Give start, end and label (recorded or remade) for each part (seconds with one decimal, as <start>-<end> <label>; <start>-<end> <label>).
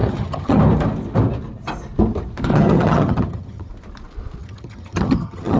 0.0-0.6 remade; 0.6-2.5 recorded; 2.5-3.7 remade; 3.7-4.4 recorded; 4.4-5.6 remade